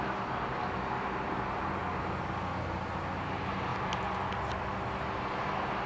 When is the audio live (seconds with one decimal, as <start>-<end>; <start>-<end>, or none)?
0.0-5.9